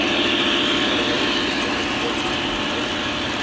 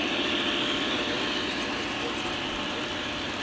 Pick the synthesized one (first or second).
second